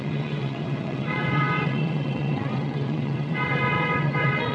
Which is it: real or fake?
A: fake